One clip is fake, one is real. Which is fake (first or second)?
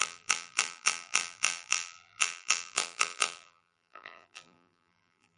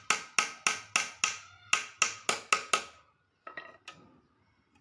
first